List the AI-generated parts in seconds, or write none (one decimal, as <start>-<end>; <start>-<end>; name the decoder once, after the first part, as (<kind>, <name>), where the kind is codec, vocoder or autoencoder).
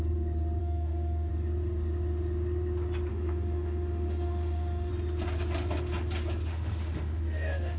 0.6-1.3 (autoencoder, DAC-VAE); 3.1-4.9; 6.5-7.8